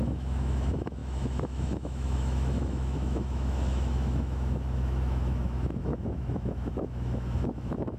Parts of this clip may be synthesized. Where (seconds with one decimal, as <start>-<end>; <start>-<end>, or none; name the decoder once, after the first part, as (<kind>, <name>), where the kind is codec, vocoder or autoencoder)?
0.0-8.0 (autoencoder, DAC-VAE)